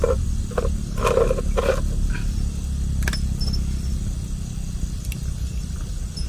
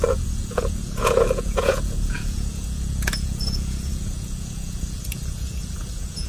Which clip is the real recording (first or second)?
first